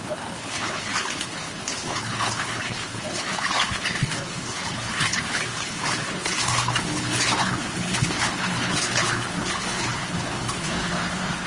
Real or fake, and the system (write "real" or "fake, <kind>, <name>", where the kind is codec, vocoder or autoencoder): fake, codec, HILCodec